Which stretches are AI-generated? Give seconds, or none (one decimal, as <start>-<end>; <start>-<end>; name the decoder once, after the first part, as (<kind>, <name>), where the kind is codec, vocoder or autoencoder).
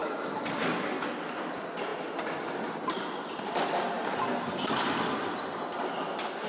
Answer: none